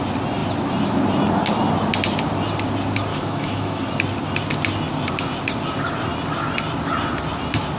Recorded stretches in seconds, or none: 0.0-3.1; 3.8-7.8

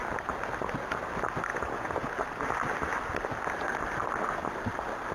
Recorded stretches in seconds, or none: 0.0-1.5; 2.1-5.1